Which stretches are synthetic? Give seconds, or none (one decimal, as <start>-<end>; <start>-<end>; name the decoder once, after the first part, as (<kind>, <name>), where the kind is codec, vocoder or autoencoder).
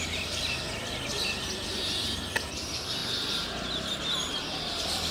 0.0-3.0 (vocoder, BigVGAN v2); 4.3-5.1